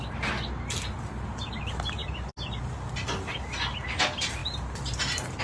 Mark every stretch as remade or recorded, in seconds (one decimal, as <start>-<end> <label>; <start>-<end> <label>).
0.0-5.4 recorded